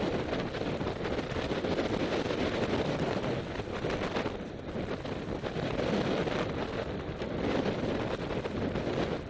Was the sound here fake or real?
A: real